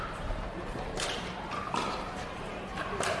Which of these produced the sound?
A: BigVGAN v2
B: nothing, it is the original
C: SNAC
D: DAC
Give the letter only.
A